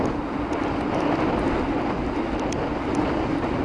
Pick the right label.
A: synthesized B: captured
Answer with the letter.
B